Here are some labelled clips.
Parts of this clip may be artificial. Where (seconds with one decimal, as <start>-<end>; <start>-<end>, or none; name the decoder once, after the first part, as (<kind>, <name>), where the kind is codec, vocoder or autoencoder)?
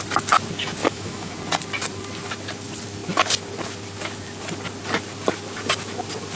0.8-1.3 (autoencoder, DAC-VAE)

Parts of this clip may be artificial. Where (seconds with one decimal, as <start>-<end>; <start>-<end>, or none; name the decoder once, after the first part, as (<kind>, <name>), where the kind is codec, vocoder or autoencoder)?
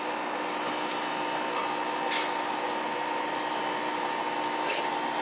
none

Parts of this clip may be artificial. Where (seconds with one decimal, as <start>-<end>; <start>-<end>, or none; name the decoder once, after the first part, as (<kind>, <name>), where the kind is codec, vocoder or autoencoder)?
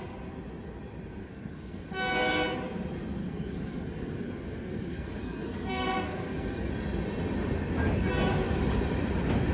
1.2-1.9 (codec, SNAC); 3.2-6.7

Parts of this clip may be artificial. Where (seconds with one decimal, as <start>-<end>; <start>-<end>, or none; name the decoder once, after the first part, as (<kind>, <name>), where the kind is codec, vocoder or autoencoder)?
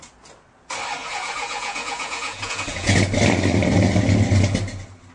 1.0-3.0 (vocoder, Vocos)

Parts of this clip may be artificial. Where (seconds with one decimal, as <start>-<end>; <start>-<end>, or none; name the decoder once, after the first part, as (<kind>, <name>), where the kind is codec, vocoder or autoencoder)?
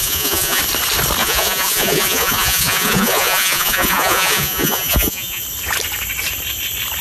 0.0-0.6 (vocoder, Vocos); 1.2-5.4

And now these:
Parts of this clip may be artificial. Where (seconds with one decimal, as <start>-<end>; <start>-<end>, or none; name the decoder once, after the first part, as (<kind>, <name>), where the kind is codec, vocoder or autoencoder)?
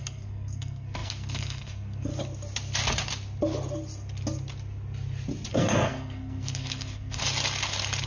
0.0-2.1 (codec, SNAC); 5.5-7.2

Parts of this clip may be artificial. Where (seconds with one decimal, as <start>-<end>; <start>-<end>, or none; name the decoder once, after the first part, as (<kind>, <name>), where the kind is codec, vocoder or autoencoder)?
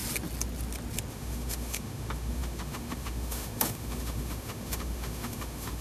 1.1-5.8 (autoencoder, DAC-VAE)